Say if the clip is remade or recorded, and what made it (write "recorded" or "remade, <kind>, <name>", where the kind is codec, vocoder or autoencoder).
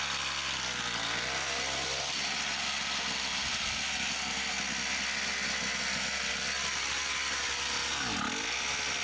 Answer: recorded